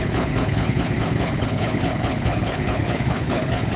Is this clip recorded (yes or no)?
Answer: no